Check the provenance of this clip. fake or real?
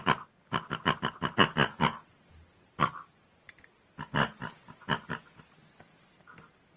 real